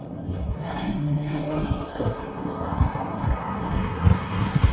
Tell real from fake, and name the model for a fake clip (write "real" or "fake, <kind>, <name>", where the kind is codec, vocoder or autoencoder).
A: fake, codec, SNAC